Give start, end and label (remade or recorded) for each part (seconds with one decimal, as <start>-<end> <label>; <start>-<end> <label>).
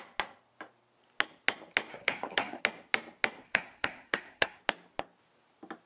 0.0-1.9 recorded; 1.9-2.6 remade; 2.6-3.4 recorded; 3.4-4.6 remade; 4.6-5.9 recorded